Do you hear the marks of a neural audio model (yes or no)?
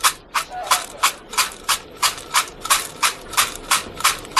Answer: no